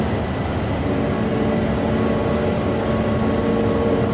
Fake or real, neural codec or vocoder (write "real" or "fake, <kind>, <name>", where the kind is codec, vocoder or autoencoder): real